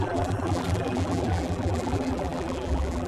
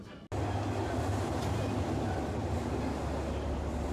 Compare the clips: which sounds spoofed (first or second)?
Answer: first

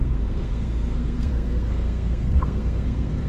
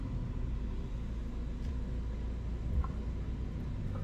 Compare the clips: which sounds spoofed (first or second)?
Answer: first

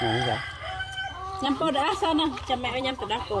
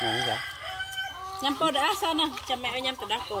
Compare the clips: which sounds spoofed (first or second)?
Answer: first